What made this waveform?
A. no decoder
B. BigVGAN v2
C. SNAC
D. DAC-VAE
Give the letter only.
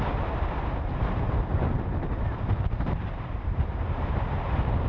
B